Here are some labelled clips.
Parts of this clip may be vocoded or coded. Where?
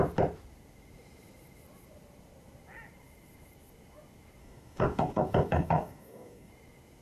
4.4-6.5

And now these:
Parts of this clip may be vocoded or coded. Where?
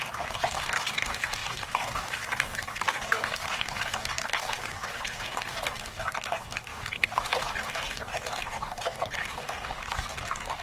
0.0-10.6